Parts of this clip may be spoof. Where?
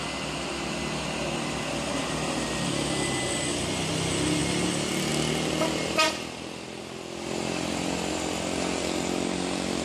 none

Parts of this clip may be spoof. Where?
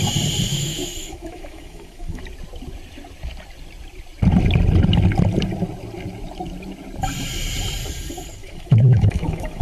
0.5-2.2 (autoencoder, DAC-VAE); 8.4-9.6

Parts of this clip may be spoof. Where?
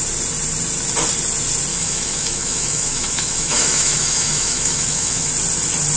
1.7-5.3 (autoencoder, DAC-VAE)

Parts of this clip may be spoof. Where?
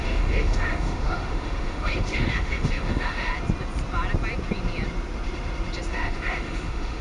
0.0-3.3 (autoencoder, DAC-VAE); 5.9-7.0